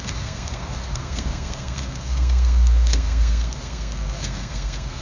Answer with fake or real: fake